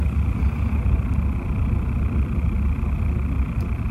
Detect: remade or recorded recorded